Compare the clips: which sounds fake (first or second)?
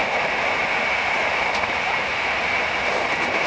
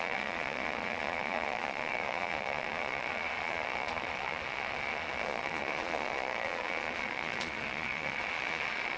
second